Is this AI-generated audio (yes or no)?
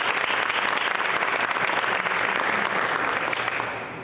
no